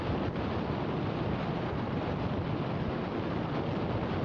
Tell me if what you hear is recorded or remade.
recorded